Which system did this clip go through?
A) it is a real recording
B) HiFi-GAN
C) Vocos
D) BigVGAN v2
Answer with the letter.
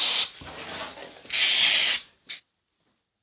A